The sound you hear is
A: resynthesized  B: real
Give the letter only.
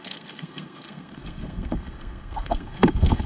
A